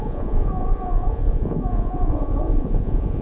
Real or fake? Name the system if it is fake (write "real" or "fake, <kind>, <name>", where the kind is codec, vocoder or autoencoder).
fake, vocoder, Vocos